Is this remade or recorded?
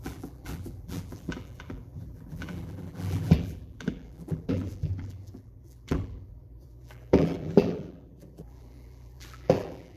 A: remade